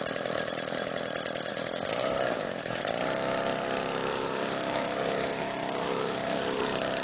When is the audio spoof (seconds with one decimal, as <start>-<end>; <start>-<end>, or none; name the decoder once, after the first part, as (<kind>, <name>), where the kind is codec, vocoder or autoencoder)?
1.5-2.8 (codec, DAC); 4.1-6.6